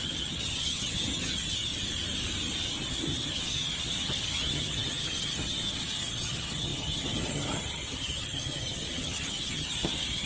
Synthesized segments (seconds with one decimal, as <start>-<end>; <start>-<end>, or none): 0.0-1.7; 2.8-10.3